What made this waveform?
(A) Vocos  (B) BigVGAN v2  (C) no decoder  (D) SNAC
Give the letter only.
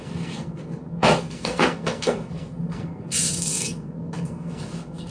D